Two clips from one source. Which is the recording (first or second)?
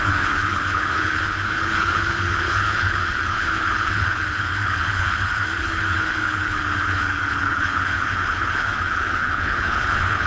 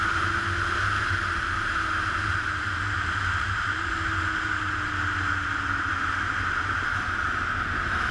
second